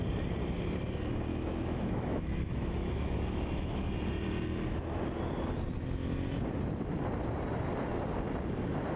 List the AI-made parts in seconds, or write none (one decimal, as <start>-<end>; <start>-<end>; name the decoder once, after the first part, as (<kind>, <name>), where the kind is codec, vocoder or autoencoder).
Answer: 1.3-3.9 (autoencoder, DAC-VAE)